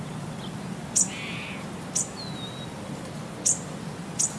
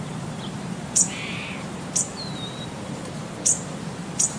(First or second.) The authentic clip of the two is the first